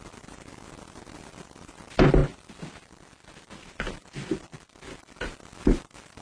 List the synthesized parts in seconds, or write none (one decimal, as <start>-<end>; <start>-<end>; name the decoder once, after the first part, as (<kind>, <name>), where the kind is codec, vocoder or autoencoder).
2.2-5.4 (vocoder, BigVGAN v2)